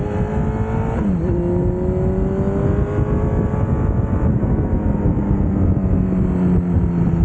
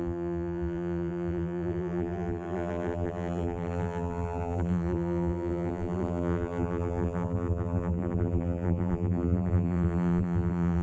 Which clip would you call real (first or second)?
first